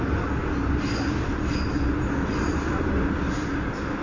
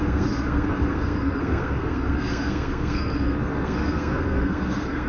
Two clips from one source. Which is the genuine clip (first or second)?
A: first